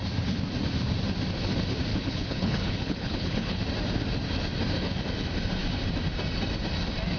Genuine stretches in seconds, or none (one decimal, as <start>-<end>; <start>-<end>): 0.0-1.9; 3.6-7.2